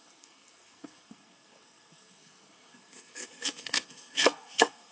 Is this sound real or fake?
fake